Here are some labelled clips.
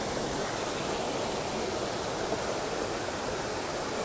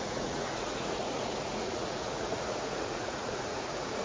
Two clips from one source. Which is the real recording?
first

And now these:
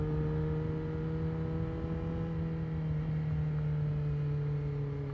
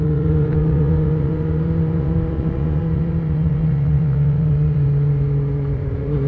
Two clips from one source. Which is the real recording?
first